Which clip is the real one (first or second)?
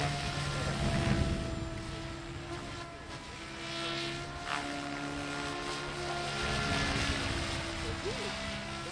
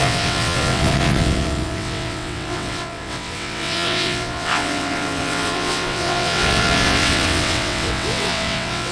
first